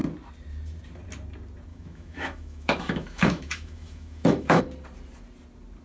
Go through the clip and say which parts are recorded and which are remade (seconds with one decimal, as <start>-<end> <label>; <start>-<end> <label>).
0.0-1.7 recorded; 1.7-4.6 remade; 4.6-5.8 recorded